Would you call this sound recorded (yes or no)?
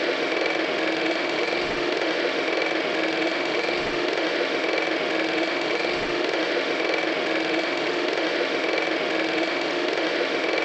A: no